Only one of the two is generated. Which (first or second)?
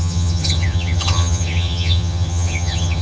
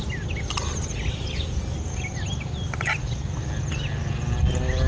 first